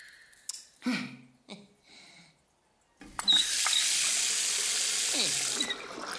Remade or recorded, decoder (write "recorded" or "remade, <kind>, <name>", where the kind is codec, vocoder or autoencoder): recorded